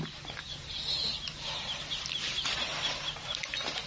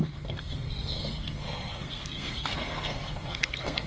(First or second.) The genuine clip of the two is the first